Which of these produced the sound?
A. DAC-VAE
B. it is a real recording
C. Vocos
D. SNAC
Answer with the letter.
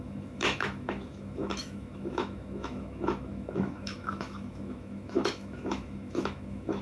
A